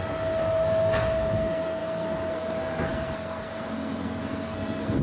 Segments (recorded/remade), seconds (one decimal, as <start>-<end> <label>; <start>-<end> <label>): 0.0-5.0 remade